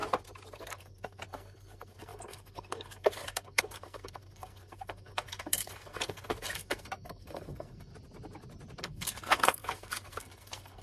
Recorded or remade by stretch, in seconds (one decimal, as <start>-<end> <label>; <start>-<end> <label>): 0.0-0.5 recorded; 0.5-7.9 remade; 7.9-8.8 recorded; 8.8-10.8 remade